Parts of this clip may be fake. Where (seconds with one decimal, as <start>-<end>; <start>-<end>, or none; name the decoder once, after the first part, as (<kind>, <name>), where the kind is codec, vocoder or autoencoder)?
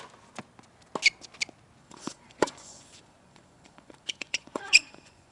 1.8-5.3 (vocoder, Vocos)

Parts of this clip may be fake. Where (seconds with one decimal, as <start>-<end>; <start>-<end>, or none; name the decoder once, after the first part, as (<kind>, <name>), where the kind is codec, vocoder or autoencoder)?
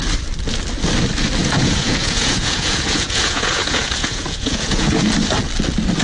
1.4-5.0 (vocoder, Vocos)